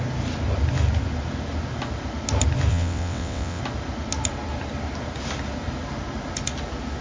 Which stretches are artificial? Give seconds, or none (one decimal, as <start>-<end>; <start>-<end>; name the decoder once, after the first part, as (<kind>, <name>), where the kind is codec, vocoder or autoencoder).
2.7-3.6 (vocoder, WaveNeXt)